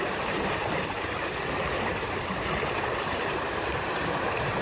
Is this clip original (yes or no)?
no